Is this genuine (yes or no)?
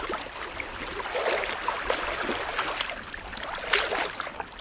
yes